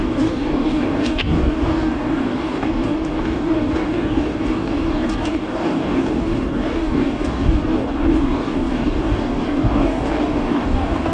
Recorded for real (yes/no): no